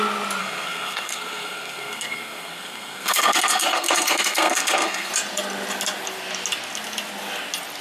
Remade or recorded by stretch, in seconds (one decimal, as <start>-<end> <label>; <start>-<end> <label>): 0.0-0.4 recorded; 0.4-5.1 remade; 5.1-7.8 recorded